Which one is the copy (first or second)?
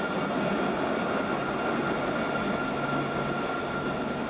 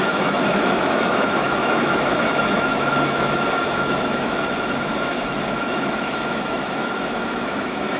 second